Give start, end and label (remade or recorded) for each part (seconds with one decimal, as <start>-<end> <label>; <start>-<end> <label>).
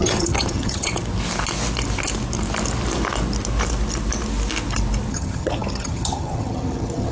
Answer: 0.0-0.9 remade; 0.9-5.1 recorded; 5.1-7.1 remade